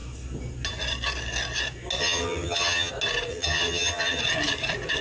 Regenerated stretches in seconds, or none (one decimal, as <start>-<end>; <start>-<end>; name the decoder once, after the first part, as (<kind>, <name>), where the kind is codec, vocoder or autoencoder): 2.0-2.9 (vocoder, HiFi-GAN); 3.3-4.2